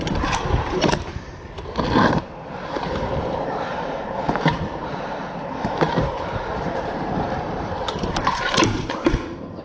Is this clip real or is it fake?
fake